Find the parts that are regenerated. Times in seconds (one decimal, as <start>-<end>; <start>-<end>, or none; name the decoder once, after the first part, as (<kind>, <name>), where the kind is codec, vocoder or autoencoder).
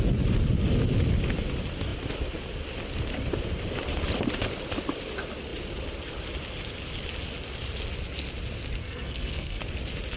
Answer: 8.8-9.6 (codec, SNAC)